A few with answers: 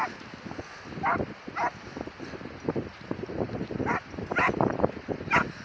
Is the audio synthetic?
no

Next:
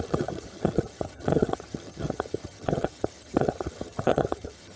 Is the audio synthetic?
yes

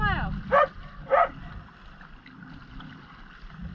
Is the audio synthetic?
no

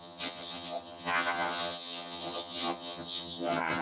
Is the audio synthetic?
yes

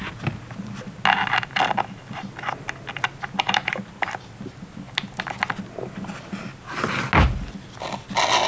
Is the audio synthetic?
no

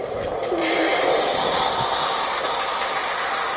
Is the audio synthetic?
no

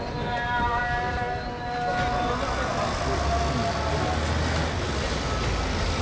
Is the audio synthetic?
no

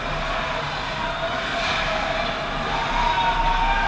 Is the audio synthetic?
no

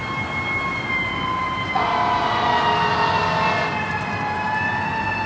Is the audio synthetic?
no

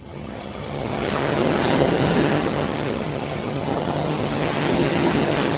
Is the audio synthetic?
yes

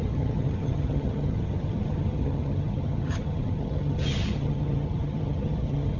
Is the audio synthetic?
yes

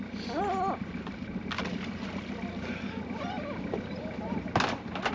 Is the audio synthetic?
no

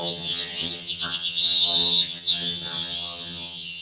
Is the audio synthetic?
yes